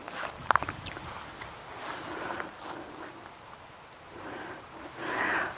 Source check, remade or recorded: recorded